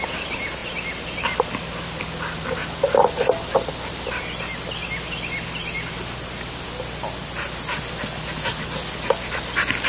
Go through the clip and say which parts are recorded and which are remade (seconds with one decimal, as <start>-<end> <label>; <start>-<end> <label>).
0.0-9.9 recorded